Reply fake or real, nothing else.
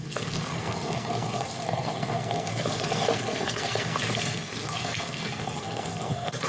fake